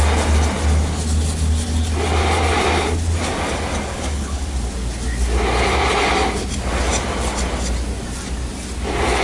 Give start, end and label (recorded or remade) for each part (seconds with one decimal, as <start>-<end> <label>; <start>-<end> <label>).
0.0-3.9 recorded; 3.9-4.4 remade; 4.4-9.2 recorded

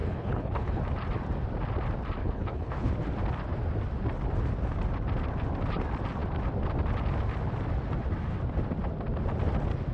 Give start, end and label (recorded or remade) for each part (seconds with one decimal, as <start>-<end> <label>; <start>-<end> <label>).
0.0-0.8 remade; 0.8-2.2 recorded; 2.2-2.9 remade; 2.9-9.9 recorded

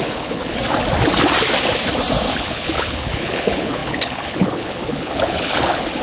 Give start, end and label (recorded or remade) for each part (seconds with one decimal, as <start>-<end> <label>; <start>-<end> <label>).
0.0-0.6 remade; 0.6-2.3 recorded; 2.3-6.0 remade

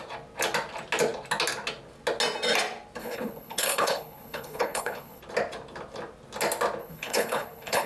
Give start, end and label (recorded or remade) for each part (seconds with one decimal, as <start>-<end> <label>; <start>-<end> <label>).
0.0-3.0 recorded; 3.0-5.2 remade; 5.2-6.8 recorded; 6.8-7.9 remade

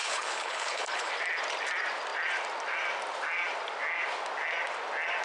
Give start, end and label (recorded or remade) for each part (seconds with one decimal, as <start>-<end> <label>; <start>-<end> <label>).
0.0-1.1 remade; 1.1-5.2 recorded

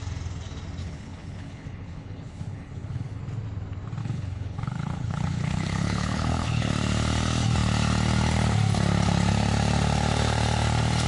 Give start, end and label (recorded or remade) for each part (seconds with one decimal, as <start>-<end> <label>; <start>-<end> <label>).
0.0-0.8 recorded; 0.8-3.2 remade; 3.2-4.0 recorded; 4.0-6.7 remade; 6.7-11.1 recorded

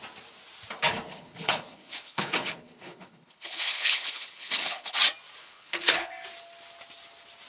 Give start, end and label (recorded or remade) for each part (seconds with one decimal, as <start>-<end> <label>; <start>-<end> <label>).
0.0-1.1 recorded; 1.1-5.0 remade; 5.0-5.4 recorded; 5.4-6.1 remade; 6.1-7.5 recorded

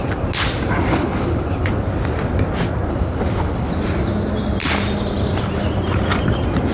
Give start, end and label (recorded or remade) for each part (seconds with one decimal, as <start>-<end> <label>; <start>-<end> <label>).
0.0-0.9 recorded; 0.9-1.7 remade; 1.7-2.9 recorded; 2.9-3.7 remade; 3.7-6.7 recorded